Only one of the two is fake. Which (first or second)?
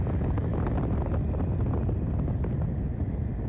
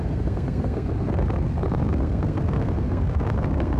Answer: second